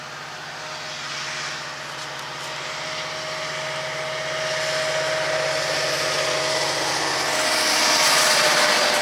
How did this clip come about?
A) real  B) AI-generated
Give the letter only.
A